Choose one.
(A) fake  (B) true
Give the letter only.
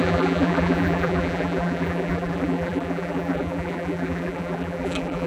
A